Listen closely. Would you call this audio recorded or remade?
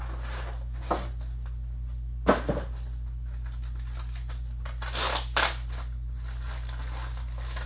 recorded